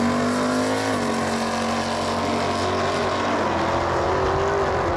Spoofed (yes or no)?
no